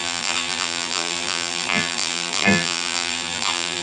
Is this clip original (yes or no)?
no